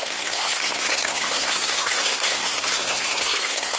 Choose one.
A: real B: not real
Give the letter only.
B